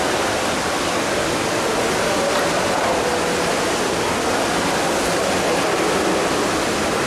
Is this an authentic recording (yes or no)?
yes